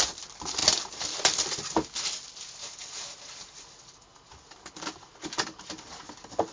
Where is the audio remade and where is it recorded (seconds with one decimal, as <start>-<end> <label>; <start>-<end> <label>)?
0.0-6.5 recorded